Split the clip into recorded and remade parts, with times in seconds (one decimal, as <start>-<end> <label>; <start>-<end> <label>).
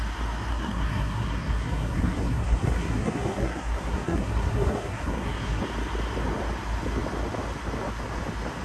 0.0-0.5 recorded; 0.5-5.6 remade; 5.6-8.6 recorded